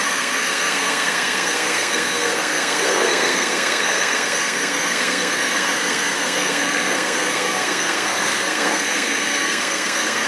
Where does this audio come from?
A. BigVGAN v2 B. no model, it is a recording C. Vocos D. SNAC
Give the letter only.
D